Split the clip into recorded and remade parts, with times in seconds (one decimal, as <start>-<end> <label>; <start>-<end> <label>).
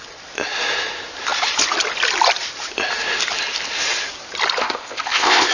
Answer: 0.0-4.6 recorded; 4.6-5.5 remade